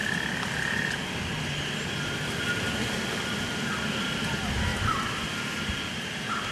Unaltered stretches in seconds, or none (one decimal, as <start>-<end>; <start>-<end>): 0.0-6.5